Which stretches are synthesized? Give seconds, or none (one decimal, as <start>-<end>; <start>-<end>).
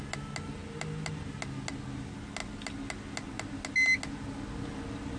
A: none